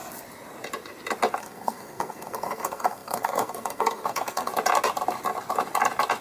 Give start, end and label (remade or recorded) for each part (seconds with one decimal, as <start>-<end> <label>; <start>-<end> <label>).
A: 0.0-1.4 recorded; 1.4-4.5 remade; 4.5-6.2 recorded